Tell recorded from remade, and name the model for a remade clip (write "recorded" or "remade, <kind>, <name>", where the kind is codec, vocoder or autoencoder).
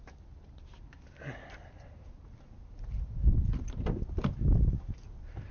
recorded